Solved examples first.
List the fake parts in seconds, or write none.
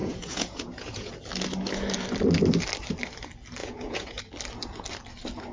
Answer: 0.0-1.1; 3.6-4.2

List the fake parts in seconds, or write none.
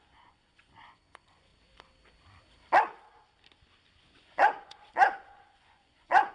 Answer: 0.0-1.5; 4.0-6.3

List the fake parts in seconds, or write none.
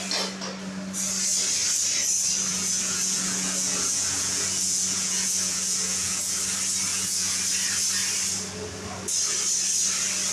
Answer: 2.5-6.4; 6.9-7.4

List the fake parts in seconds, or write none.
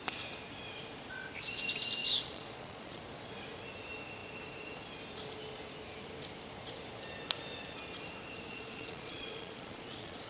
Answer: 2.0-3.0; 8.5-10.3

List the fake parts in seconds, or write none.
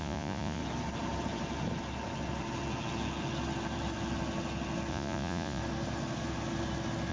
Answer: 0.0-0.6; 4.9-5.6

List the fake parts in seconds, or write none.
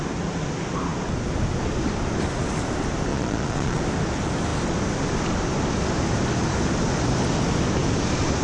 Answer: 3.1-3.8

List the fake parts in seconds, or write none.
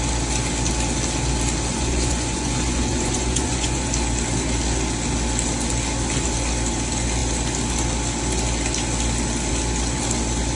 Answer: 1.7-3.9